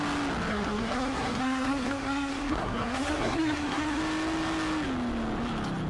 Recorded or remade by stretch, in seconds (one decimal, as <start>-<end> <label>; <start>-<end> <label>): 0.0-0.5 recorded; 0.5-4.0 remade; 4.0-5.9 recorded

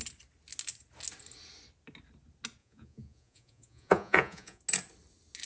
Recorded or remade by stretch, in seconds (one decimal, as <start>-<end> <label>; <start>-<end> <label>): 0.0-2.6 recorded; 2.6-4.6 remade; 4.6-5.5 recorded

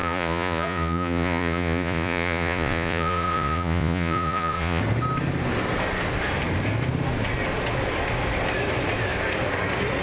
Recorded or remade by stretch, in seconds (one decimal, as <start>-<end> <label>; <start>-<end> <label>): 0.0-4.8 remade; 4.8-10.0 recorded

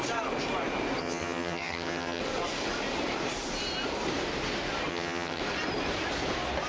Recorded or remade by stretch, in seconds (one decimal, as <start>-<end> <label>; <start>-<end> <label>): 0.0-1.0 recorded; 1.0-2.2 remade; 2.2-4.9 recorded; 4.9-5.4 remade; 5.4-6.7 recorded

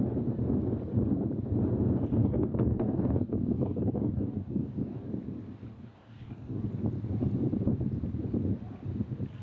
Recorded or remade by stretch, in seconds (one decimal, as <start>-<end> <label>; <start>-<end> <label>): 0.0-2.2 recorded; 2.2-5.0 remade; 5.0-5.7 recorded; 5.7-6.6 remade; 6.6-9.4 recorded

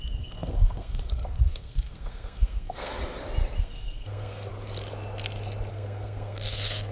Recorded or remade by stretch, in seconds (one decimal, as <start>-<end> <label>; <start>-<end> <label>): 0.0-2.9 remade; 2.9-3.6 recorded; 3.6-4.5 remade; 4.5-5.7 recorded; 5.7-6.9 remade

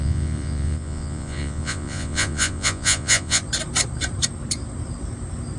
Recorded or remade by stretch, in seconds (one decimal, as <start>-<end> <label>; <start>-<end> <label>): 0.0-3.4 remade; 3.4-5.6 recorded

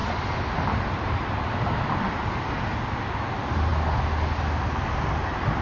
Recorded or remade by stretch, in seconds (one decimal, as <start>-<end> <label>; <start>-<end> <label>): 0.0-5.6 recorded